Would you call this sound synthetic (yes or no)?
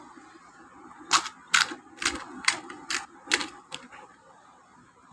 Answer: no